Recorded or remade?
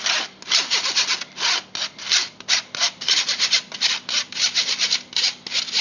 recorded